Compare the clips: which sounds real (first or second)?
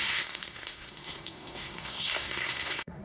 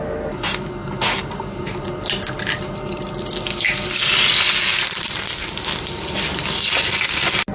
second